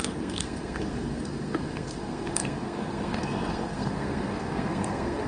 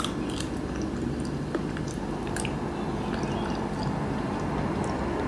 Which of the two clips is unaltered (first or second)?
second